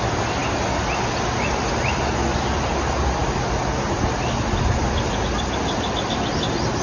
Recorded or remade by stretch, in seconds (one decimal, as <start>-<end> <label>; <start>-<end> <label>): 0.0-6.8 recorded